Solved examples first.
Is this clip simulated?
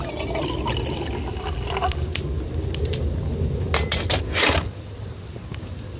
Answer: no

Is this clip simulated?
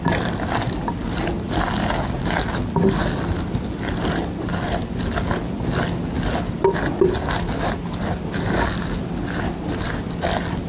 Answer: no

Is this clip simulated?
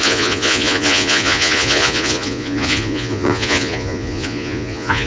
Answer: yes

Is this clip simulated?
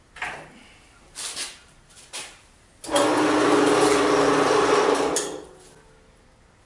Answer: no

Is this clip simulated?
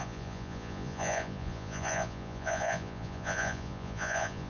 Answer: yes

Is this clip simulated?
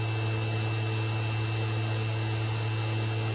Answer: no